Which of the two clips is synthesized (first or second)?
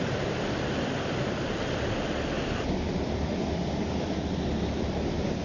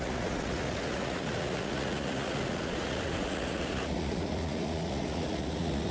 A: second